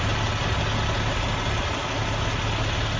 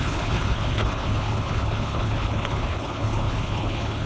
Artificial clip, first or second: second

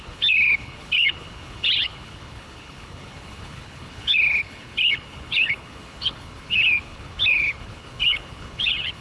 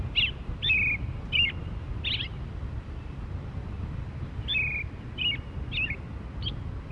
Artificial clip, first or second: first